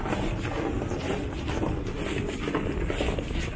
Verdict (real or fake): real